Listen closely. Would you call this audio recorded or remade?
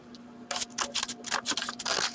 recorded